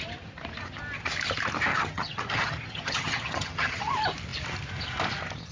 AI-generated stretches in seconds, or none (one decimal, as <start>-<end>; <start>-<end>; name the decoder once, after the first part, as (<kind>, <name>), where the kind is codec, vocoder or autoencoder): 1.7-3.9 (vocoder, HiFi-GAN)

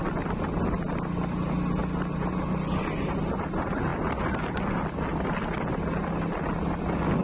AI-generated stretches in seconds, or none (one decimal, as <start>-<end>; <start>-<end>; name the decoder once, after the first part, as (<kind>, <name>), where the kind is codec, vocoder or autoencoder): none